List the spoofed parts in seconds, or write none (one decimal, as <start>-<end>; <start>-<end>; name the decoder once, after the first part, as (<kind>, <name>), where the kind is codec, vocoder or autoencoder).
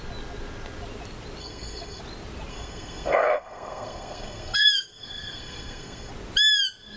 1.4-2.0 (codec, SNAC); 2.5-6.1